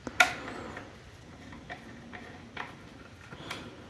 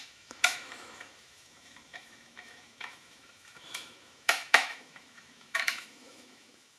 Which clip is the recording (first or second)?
first